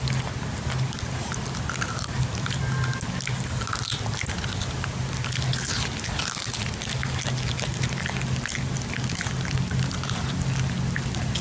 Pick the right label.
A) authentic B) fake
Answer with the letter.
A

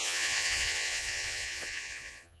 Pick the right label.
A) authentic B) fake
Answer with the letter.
B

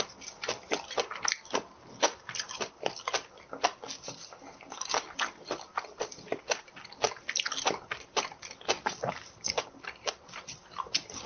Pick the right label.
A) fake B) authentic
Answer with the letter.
A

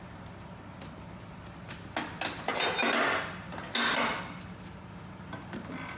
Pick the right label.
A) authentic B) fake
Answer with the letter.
A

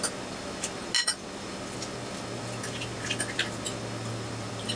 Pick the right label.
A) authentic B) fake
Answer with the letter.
A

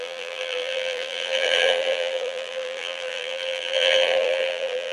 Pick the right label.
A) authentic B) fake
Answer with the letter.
B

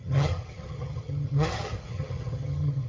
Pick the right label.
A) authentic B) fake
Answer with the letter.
B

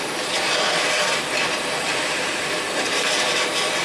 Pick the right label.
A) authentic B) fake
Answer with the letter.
B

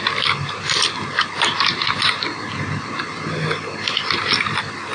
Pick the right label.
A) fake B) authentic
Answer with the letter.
B